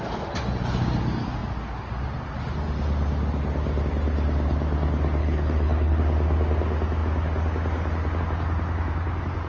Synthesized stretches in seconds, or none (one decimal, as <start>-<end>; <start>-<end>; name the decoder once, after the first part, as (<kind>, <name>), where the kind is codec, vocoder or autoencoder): 5.2-6.0 (codec, HILCodec)